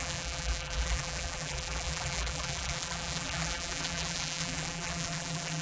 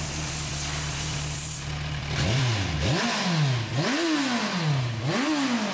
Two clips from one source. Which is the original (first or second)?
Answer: second